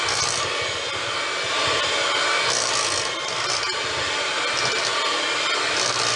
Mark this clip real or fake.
real